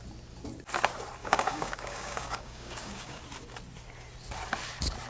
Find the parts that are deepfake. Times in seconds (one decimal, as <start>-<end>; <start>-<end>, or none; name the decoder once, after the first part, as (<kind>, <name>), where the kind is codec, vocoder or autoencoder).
1.2-3.2 (codec, DAC)